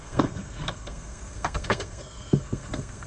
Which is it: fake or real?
fake